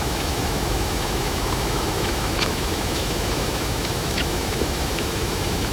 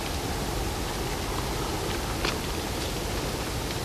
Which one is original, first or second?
second